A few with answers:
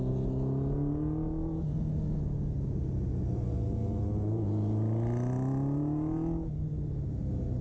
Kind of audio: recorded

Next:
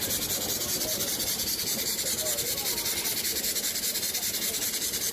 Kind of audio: remade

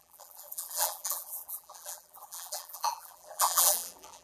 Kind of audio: remade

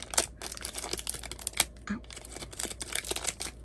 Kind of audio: recorded